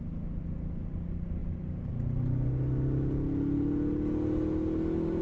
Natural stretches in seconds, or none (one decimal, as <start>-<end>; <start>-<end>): 0.0-1.4; 1.9-5.2